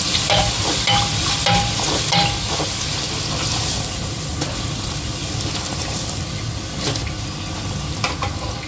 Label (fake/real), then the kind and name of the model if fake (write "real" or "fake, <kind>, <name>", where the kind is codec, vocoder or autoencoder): real